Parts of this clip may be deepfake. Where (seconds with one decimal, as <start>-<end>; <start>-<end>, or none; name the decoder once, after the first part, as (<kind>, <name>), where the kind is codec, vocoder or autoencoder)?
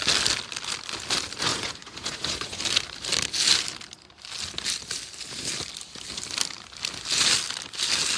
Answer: 1.5-2.6 (vocoder, Vocos)